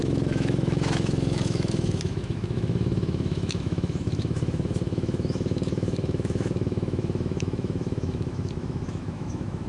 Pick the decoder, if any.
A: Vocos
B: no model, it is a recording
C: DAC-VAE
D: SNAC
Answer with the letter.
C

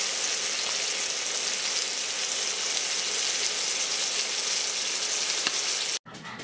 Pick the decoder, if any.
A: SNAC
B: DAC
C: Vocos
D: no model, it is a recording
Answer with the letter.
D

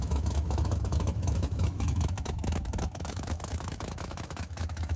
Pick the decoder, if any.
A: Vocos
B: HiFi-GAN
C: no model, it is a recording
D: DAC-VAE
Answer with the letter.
D